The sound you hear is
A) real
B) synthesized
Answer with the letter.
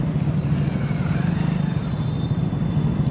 A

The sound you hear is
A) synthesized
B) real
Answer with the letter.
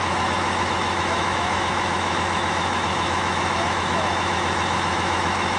A